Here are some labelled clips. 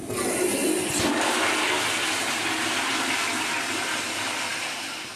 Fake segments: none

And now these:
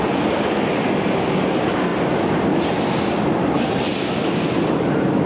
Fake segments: none

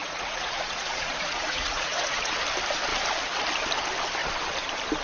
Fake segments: 0.0-2.4 (vocoder, Vocos)

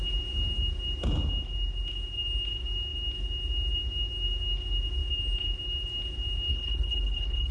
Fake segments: 6.5-7.5 (codec, HILCodec)

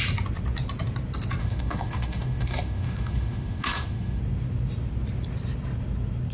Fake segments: 1.4-4.2 (autoencoder, DAC-VAE)

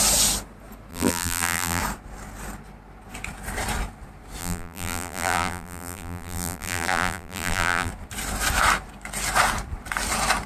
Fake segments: 0.9-1.8 (vocoder, BigVGAN v2); 4.4-7.9

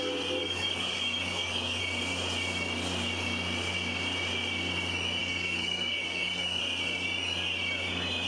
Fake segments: 0.4-1.8 (codec, DAC); 5.2-6.6